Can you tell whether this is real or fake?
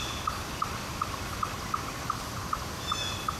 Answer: real